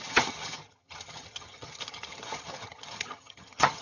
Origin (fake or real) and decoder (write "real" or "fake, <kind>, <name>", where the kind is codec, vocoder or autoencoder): fake, vocoder, HiFi-GAN